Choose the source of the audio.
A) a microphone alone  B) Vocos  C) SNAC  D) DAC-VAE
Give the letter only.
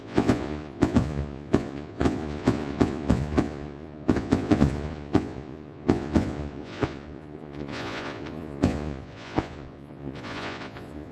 B